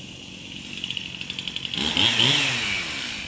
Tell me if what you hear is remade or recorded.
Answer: recorded